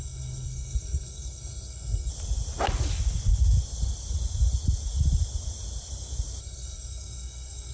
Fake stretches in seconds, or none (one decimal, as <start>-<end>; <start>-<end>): 0.0-2.1; 6.4-7.7